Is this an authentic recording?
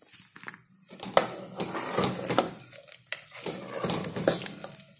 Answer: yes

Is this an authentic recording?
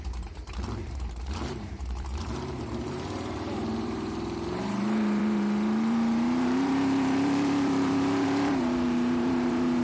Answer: no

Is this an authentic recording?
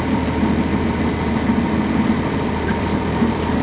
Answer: yes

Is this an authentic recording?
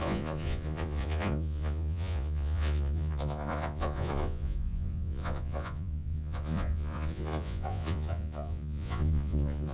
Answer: no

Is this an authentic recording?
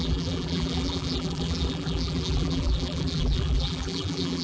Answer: no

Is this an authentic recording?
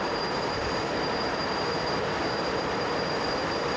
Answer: no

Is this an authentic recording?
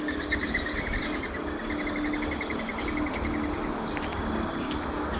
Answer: yes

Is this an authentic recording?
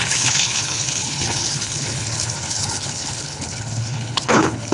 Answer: no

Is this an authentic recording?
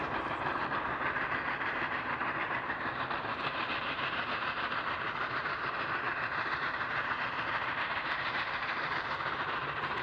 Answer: no